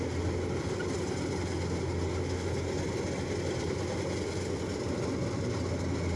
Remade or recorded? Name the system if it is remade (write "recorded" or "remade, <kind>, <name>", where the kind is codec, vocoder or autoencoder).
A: recorded